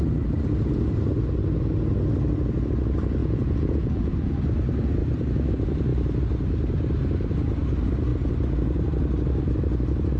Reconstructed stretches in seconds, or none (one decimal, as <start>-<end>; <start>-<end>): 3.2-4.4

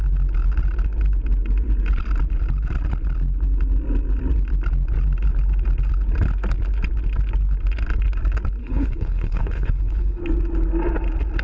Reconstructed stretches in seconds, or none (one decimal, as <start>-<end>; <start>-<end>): 8.6-10.2

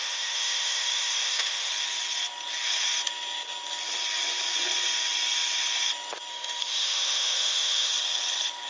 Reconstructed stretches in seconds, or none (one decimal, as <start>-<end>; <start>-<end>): 0.0-1.7; 6.3-7.9

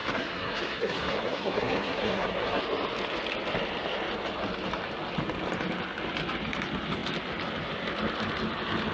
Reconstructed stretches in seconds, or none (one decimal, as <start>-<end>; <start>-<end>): 0.0-2.6

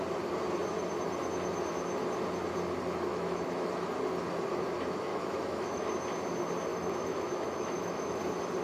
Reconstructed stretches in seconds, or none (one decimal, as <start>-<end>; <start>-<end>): 3.1-3.7; 5.1-5.9; 6.7-8.2

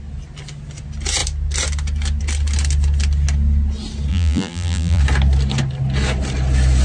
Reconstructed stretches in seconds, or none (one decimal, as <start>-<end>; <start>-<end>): 4.1-5.0